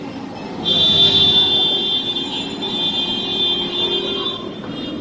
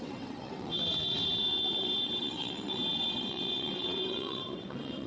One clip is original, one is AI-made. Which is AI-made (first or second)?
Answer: second